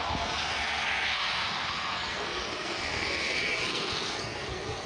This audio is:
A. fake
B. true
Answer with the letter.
A